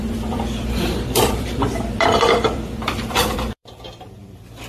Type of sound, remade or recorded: remade